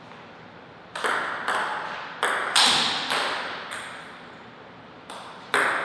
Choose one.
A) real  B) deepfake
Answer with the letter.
A